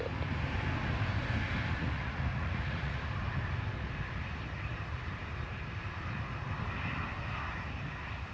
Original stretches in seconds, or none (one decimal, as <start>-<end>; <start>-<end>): 0.0-1.8; 3.0-8.3